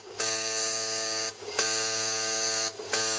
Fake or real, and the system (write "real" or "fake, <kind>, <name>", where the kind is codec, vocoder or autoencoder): fake, codec, DAC